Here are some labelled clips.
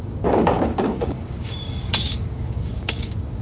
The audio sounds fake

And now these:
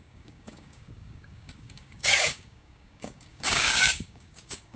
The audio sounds fake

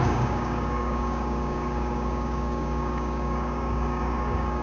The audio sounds fake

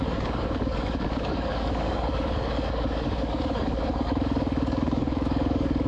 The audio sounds fake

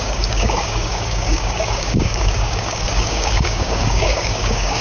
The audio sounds fake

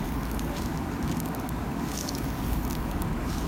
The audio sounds fake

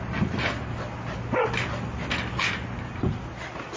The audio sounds real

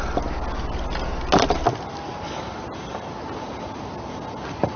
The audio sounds real